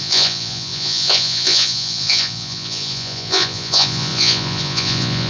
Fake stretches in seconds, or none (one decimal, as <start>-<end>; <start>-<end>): 0.0-5.3